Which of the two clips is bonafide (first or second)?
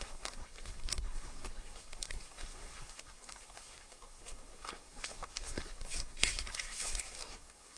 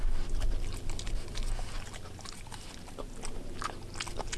second